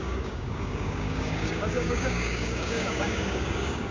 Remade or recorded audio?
remade